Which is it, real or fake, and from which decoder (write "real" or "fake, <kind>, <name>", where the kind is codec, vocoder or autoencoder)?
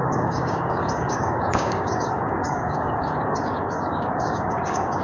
fake, codec, DAC